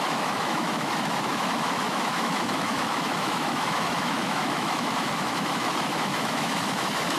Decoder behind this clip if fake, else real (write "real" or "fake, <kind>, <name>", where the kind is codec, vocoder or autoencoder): fake, autoencoder, DAC-VAE